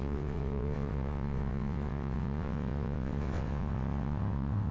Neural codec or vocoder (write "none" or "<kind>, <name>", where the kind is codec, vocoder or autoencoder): vocoder, WaveNeXt